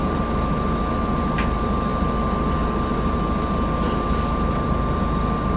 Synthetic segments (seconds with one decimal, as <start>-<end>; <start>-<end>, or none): none